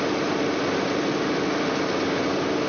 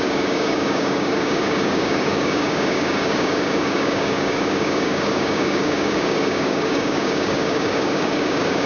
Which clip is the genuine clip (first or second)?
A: first